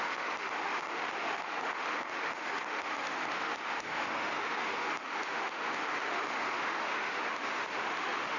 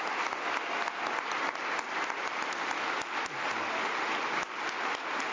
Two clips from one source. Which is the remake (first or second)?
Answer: first